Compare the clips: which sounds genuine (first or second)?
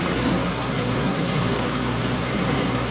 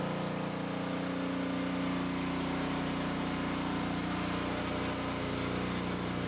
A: second